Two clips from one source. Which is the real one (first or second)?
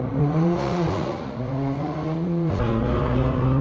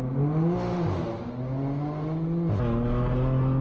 second